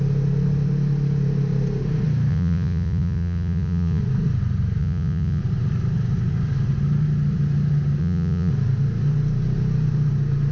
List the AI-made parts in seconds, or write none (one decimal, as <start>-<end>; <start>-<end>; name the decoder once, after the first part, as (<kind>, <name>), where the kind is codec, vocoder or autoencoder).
2.3-4.0 (vocoder, Vocos); 4.8-5.4; 8.0-8.5